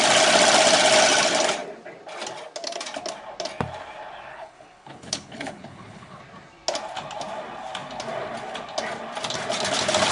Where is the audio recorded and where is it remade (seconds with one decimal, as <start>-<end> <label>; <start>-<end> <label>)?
0.0-4.3 recorded; 4.3-6.2 remade; 6.2-10.1 recorded